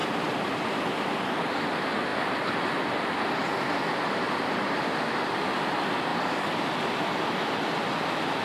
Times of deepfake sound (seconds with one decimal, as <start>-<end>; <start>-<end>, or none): 0.0-0.8; 6.1-7.2